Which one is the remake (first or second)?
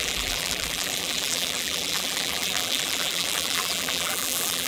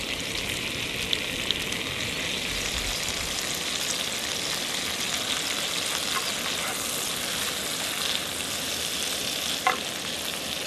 first